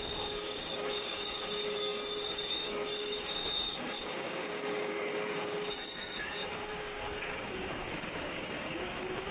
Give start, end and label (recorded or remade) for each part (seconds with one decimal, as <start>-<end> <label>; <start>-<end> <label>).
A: 0.0-9.3 remade